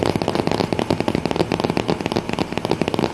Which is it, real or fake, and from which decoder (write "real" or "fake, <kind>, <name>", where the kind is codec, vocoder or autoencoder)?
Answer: real